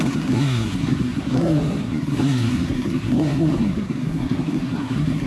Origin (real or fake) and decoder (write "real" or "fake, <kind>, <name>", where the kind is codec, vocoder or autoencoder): fake, codec, SNAC